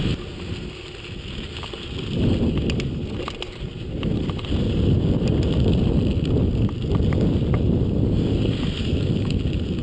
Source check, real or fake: real